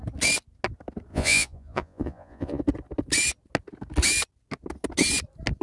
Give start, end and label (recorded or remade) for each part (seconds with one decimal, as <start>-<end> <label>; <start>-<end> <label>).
0.0-1.1 recorded; 1.1-2.6 remade; 2.6-5.6 recorded